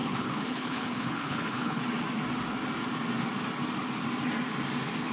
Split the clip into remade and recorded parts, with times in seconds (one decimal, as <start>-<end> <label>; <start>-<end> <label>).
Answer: 0.0-1.8 remade; 1.8-5.1 recorded

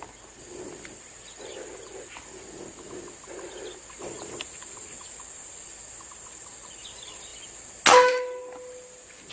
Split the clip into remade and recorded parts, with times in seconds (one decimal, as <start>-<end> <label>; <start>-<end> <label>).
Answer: 0.0-9.3 recorded

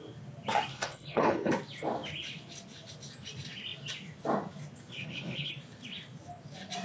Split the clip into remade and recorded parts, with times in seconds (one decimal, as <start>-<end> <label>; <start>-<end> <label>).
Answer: 0.0-0.7 recorded; 0.7-1.5 remade; 1.5-4.9 recorded; 4.9-5.5 remade; 5.5-6.8 recorded

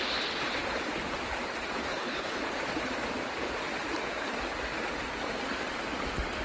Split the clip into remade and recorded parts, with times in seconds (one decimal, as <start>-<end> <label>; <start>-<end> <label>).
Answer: 0.0-1.8 recorded; 1.8-2.4 remade; 2.4-6.4 recorded

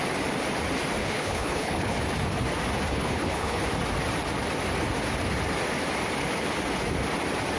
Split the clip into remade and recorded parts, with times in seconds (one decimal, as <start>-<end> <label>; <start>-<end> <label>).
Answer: 0.0-1.0 recorded; 1.0-2.0 remade; 2.0-2.9 recorded; 2.9-3.6 remade; 3.6-7.6 recorded